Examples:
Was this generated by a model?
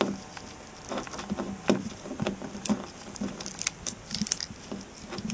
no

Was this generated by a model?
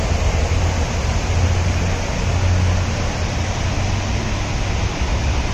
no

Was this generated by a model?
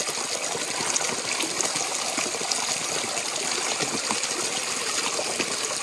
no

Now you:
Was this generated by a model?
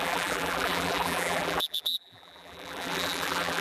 yes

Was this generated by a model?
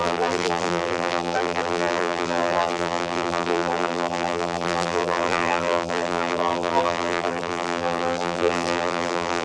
yes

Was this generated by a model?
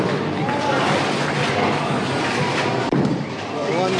no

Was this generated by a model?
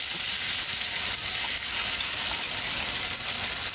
no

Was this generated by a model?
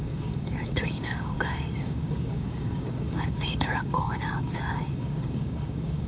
yes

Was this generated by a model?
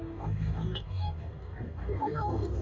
yes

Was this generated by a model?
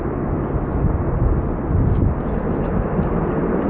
no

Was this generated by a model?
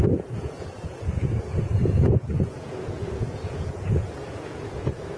yes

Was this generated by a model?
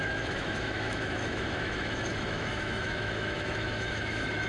yes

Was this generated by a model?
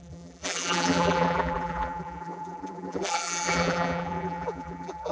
yes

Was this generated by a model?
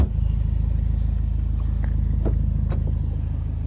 no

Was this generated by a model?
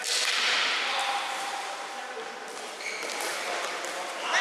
yes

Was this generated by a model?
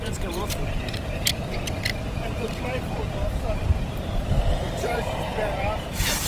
yes